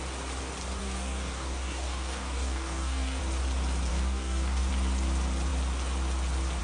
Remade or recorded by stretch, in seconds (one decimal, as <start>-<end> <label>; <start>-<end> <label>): 0.0-0.8 recorded; 0.8-3.2 remade; 3.2-3.9 recorded; 3.9-4.7 remade; 4.7-6.6 recorded